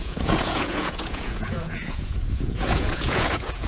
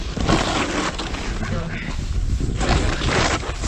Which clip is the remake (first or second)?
first